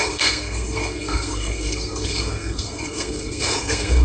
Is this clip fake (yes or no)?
yes